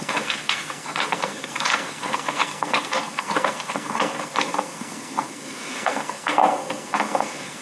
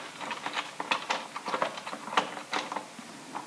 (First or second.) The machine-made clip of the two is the first